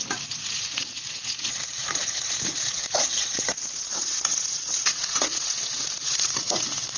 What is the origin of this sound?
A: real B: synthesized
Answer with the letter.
B